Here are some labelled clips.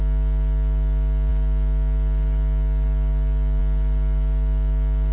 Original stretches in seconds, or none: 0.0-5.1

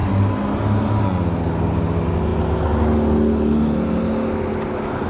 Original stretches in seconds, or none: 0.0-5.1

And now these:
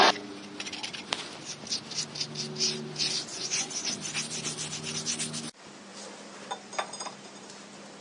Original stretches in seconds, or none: 0.0-3.3; 3.9-8.0

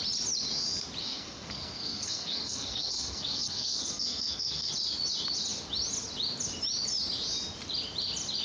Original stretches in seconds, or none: 0.0-1.0; 4.7-8.4